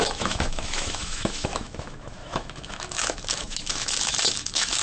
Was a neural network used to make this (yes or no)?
yes